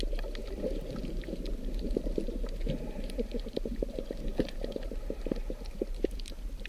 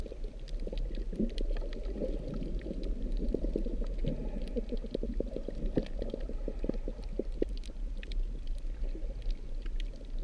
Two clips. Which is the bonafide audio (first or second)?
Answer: second